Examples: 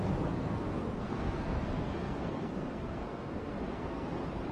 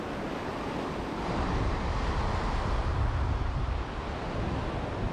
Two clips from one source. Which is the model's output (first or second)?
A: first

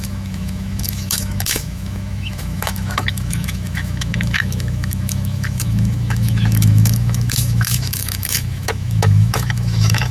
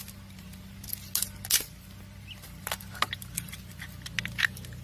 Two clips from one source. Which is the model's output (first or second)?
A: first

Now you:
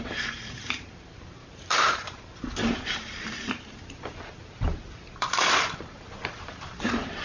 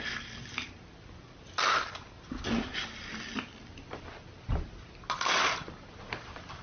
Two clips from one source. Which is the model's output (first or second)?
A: first